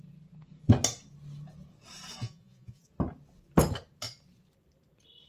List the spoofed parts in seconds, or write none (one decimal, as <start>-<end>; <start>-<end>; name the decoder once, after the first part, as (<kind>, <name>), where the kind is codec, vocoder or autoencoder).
2.2-2.9 (vocoder, Vocos)